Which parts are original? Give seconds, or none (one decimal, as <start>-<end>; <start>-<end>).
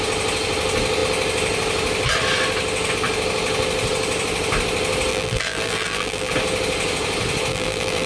0.0-5.1; 6.3-7.5